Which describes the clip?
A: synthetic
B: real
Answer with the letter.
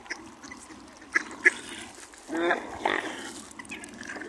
B